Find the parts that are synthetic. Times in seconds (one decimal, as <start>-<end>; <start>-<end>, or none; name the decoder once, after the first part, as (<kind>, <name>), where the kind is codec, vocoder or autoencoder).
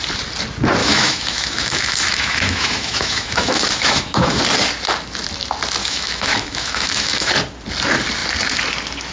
0.8-4.4 (autoencoder, DAC-VAE); 5.8-7.3